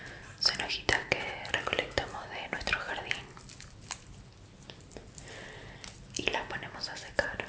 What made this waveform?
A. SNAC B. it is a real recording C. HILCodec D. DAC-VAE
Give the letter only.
B